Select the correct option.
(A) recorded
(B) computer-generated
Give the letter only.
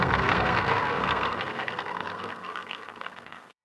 B